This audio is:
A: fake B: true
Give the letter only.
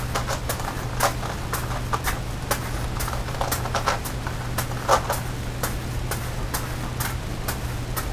B